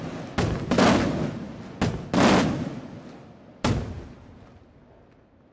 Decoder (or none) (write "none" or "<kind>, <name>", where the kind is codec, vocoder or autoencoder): none